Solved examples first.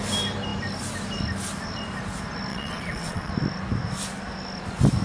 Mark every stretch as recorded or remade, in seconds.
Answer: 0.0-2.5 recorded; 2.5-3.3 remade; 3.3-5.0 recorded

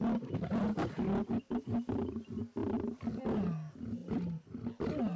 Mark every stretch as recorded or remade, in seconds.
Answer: 0.0-5.2 recorded